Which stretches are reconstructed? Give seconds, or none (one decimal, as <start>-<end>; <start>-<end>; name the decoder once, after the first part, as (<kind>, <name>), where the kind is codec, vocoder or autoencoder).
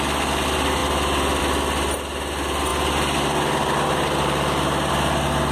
none